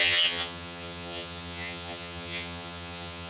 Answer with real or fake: fake